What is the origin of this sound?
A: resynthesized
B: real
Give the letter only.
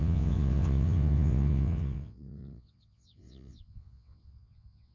A